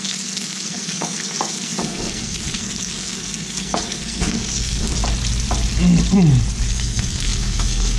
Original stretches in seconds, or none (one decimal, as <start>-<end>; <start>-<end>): 4.9-6.7

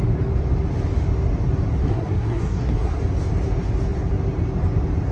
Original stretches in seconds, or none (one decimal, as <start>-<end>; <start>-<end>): 0.0-1.8; 3.0-5.1

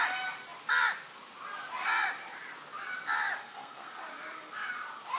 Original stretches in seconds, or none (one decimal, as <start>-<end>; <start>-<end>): 0.0-3.4; 3.9-5.2

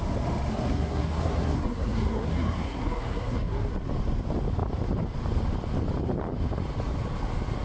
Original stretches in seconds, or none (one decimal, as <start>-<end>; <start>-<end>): 0.0-0.5; 3.7-7.6

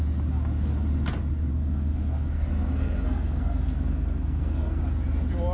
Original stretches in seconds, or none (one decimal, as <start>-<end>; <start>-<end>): 0.0-1.5; 4.8-5.5

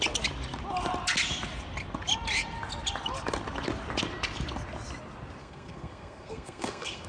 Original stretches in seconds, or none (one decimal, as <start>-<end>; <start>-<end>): 0.0-5.4

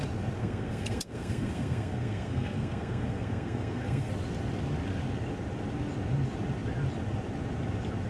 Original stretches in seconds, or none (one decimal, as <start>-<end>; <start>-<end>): 0.0-0.4; 4.1-8.1

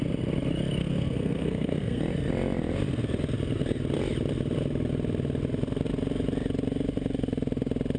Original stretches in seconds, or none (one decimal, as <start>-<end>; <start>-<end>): 0.0-0.8; 2.0-8.0